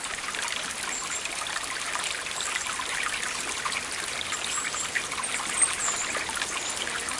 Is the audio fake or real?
real